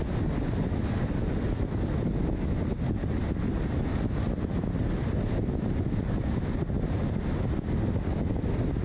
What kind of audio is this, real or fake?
real